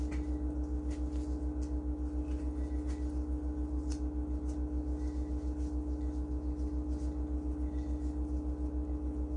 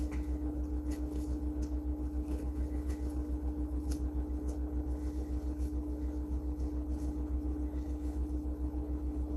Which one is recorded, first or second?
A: first